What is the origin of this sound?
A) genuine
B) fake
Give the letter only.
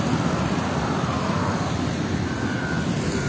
B